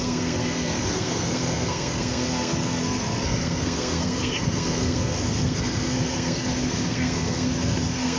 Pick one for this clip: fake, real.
fake